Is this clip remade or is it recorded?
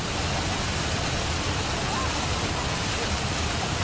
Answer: recorded